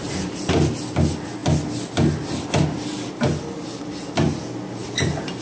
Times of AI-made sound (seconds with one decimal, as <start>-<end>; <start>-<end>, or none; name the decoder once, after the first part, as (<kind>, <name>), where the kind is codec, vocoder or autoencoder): none

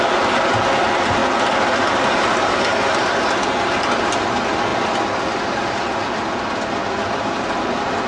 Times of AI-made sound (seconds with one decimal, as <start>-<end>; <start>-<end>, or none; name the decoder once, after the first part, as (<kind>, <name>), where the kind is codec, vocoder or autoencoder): none